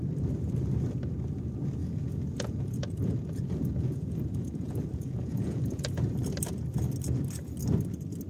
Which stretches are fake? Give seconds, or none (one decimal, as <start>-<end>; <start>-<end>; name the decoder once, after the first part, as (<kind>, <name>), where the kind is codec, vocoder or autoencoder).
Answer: 1.8-6.1 (vocoder, Vocos)